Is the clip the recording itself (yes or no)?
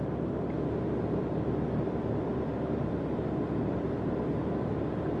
yes